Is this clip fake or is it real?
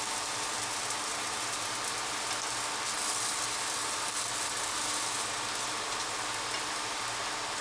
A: real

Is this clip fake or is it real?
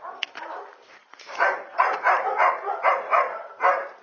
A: fake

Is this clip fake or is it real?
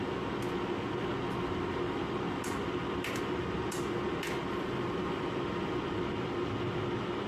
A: real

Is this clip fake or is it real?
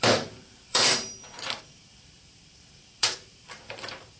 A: fake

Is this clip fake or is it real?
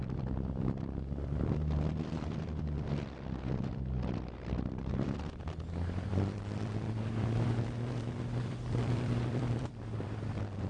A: fake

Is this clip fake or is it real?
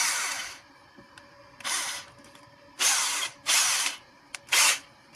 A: fake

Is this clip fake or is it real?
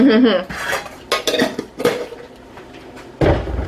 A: real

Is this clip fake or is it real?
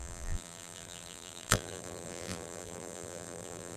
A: fake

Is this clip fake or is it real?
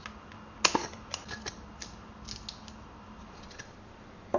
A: real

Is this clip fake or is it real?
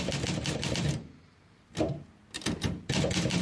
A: real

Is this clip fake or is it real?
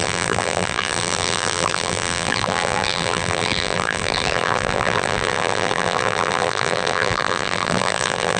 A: fake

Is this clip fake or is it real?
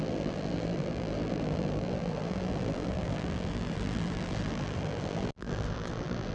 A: fake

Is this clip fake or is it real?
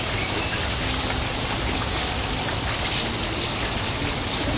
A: real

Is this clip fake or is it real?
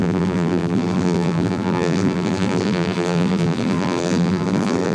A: fake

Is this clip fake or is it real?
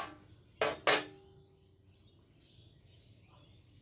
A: real